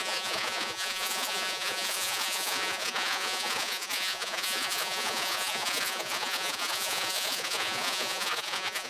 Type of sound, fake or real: fake